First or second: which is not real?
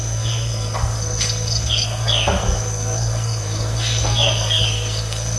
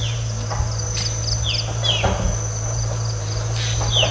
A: first